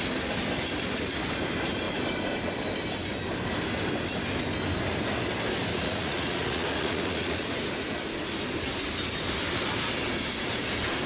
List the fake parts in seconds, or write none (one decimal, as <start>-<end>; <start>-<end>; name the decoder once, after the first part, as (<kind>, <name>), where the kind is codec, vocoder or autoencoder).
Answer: 5.7-7.5 (vocoder, Vocos)